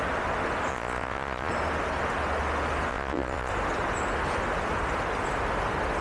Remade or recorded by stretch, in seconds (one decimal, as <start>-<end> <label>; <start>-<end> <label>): 0.0-0.7 recorded; 0.7-1.5 remade; 1.5-2.9 recorded; 2.9-3.5 remade; 3.5-6.0 recorded